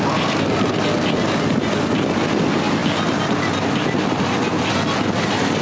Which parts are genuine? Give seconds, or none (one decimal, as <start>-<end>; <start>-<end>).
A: 0.0-5.6